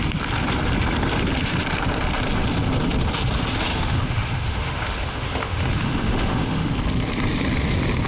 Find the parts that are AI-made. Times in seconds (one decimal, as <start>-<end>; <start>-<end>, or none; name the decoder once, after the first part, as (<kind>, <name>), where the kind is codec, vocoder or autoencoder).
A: 3.7-6.7 (autoencoder, DAC-VAE)